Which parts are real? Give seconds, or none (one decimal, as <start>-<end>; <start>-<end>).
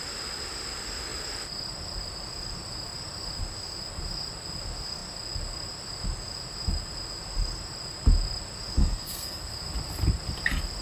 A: 0.0-8.8; 9.4-10.8